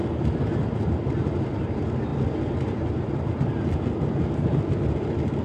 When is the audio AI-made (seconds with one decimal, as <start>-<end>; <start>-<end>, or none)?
none